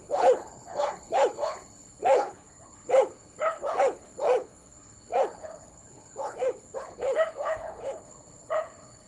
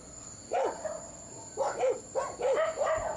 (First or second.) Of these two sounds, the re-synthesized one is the first